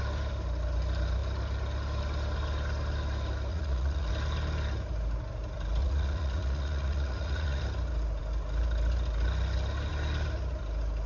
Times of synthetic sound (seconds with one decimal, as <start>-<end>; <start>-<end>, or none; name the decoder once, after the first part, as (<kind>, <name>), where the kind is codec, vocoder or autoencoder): 3.5-4.1 (vocoder, Vocos); 5.8-7.6